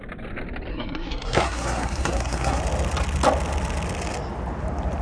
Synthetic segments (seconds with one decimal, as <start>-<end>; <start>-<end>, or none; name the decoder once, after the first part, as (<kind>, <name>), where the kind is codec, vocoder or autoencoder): 0.7-2.6 (codec, SNAC)